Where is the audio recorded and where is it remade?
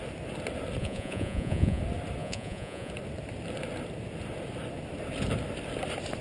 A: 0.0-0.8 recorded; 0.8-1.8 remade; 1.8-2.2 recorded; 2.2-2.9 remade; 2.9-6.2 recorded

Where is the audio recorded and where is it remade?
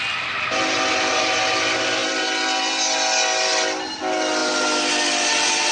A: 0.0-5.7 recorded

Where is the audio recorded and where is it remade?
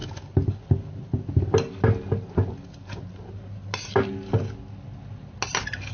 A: 0.0-5.9 recorded